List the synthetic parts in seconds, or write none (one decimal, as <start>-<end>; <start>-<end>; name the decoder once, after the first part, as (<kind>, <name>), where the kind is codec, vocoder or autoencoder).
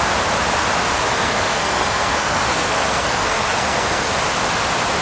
1.1-4.1 (codec, SNAC)